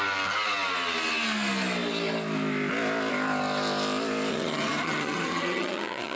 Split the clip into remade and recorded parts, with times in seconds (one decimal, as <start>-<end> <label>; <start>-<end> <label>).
0.0-4.3 recorded; 4.3-6.2 remade